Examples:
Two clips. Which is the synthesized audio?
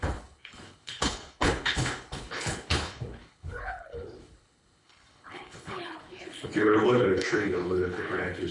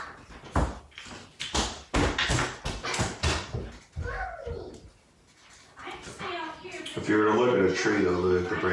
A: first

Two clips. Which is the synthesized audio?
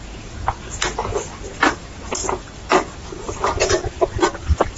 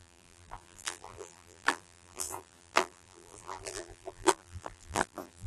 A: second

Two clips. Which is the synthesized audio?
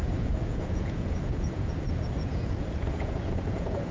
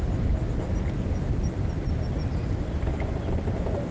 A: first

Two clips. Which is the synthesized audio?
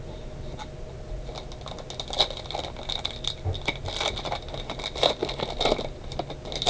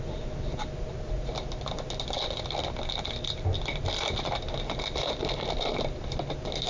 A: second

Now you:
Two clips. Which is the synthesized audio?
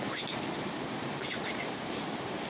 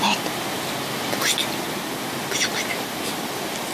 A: first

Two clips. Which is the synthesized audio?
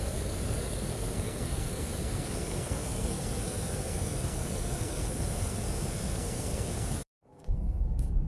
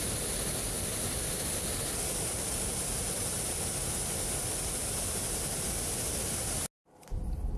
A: first